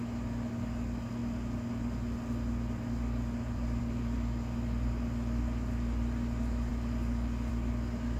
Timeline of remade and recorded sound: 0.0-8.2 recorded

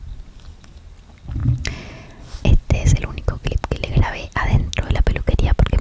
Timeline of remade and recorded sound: 0.0-5.8 recorded

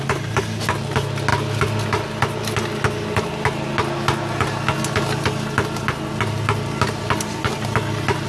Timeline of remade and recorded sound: 0.0-8.3 recorded

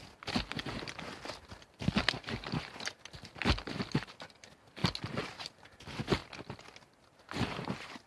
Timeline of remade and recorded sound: 0.0-8.1 recorded

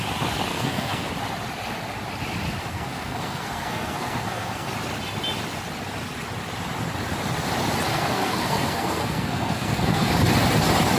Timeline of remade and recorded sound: 0.0-0.5 recorded; 0.5-1.1 remade; 1.1-2.7 recorded; 2.7-4.7 remade; 4.7-7.9 recorded; 7.9-10.1 remade; 10.1-11.0 recorded

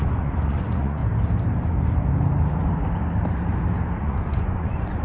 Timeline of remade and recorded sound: 0.0-1.0 remade; 1.0-4.0 recorded; 4.0-5.0 remade

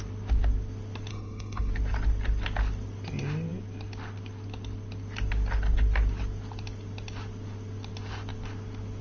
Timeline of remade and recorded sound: 0.0-1.1 recorded; 1.1-1.7 remade; 1.7-9.0 recorded

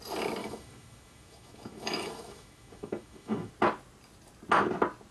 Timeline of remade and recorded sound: 0.0-0.4 recorded; 0.4-3.5 remade; 3.5-5.1 recorded